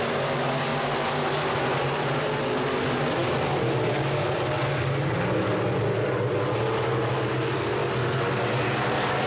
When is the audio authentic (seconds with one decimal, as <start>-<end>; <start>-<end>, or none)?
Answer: 0.0-9.3